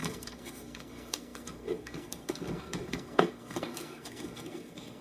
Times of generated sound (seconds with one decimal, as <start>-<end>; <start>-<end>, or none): 0.0-5.0